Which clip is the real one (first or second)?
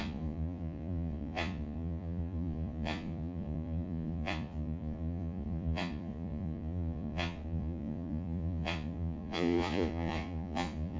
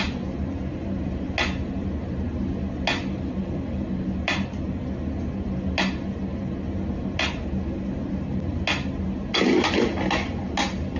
second